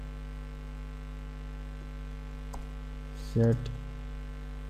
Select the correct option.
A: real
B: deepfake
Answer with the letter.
A